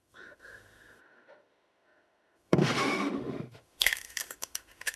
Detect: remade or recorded remade